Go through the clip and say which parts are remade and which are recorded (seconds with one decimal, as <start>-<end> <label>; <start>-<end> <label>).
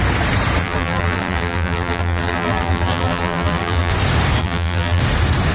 0.0-0.6 recorded; 0.6-3.9 remade; 3.9-4.4 recorded; 4.4-5.0 remade; 5.0-5.5 recorded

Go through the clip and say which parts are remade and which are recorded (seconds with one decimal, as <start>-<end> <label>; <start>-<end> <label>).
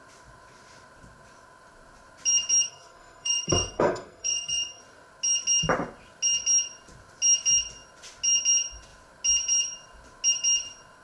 0.0-2.7 recorded; 2.7-4.8 remade; 4.8-11.0 recorded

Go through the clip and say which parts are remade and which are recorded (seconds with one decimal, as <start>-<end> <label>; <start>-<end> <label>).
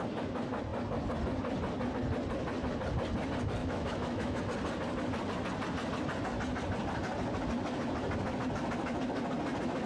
0.0-3.6 recorded; 3.6-4.4 remade; 4.4-9.9 recorded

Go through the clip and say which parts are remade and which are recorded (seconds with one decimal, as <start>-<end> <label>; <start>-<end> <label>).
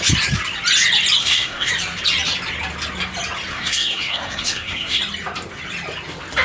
0.0-1.2 recorded; 1.2-1.7 remade; 1.7-3.5 recorded; 3.5-5.0 remade; 5.0-6.4 recorded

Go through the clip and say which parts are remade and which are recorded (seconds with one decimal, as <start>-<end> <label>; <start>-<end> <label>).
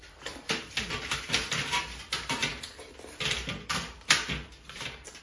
0.0-5.2 recorded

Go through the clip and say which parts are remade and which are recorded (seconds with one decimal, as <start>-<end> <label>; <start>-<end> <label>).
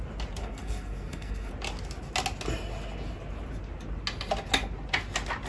0.0-0.4 recorded; 0.4-1.5 remade; 1.5-5.5 recorded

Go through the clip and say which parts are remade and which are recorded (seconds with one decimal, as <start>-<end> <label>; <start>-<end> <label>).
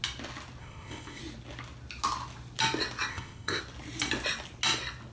0.0-0.6 recorded; 0.6-1.2 remade; 1.2-3.1 recorded; 3.1-3.6 remade; 3.6-5.1 recorded